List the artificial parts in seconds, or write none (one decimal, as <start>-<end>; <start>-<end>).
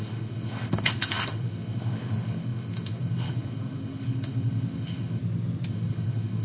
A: 0.0-5.2; 5.7-6.4